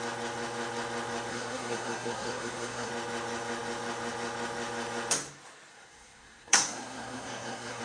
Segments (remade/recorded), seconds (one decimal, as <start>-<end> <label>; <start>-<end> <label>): 0.0-1.3 recorded; 1.3-2.9 remade; 2.9-5.7 recorded; 5.7-7.8 remade